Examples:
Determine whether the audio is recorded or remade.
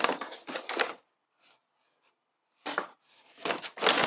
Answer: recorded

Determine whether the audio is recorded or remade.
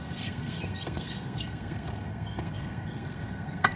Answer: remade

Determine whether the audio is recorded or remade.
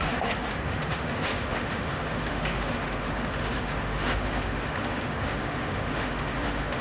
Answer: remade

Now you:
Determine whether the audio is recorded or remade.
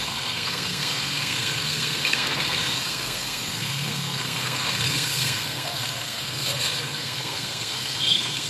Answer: remade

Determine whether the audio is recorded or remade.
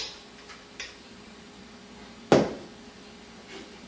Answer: recorded